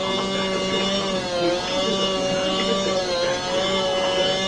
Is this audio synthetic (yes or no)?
no